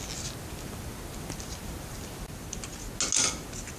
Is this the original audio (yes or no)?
yes